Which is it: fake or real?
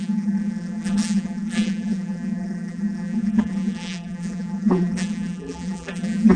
fake